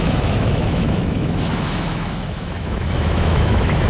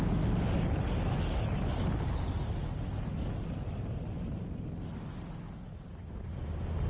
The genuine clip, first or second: second